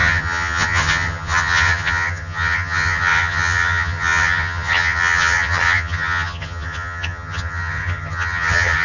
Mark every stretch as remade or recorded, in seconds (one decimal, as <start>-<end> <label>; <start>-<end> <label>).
0.0-8.8 remade

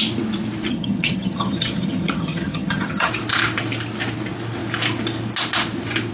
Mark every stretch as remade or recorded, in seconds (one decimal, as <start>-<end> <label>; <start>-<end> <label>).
0.0-0.7 recorded; 0.7-3.1 remade; 3.1-6.1 recorded